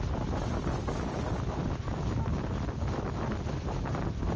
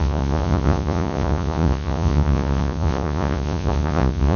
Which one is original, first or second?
first